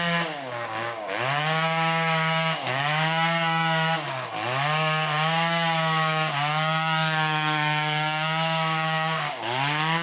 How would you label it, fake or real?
fake